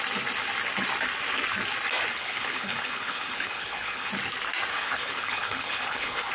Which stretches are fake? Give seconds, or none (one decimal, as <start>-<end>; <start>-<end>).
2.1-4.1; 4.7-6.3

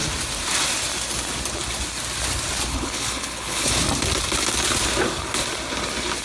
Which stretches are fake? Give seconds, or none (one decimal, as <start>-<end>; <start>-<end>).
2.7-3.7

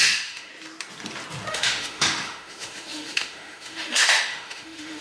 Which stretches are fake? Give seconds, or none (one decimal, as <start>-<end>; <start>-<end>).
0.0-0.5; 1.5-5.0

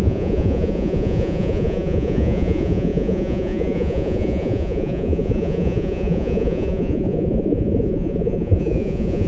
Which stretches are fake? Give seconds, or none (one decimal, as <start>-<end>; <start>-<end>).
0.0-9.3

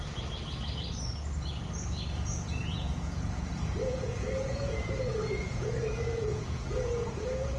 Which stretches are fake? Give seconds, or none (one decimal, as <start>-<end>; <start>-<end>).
2.7-7.6